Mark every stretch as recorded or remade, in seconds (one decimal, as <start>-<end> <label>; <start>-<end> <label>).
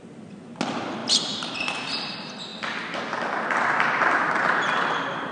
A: 0.0-5.3 recorded